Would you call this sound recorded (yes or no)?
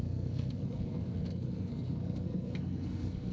no